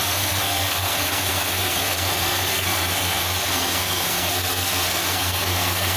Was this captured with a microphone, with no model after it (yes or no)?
no